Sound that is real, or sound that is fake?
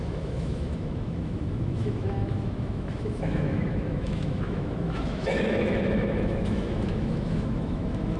fake